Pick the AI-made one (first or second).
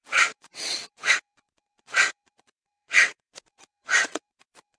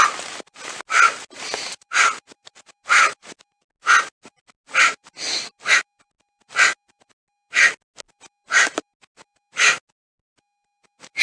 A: first